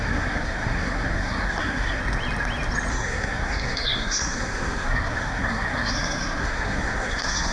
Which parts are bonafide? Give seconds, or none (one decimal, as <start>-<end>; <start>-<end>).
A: 2.0-2.9